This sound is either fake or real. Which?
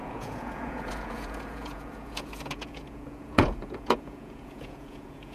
fake